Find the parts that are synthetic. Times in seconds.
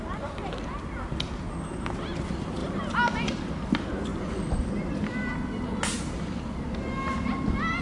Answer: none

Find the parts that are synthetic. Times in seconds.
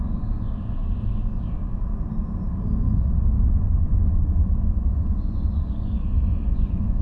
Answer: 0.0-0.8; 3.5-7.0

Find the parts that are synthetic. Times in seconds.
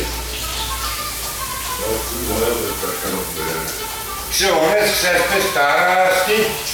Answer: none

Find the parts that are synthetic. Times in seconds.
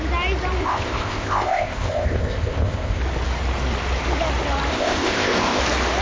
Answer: 0.6-3.0; 4.7-5.6